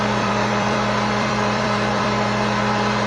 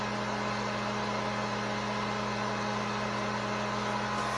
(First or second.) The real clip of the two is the second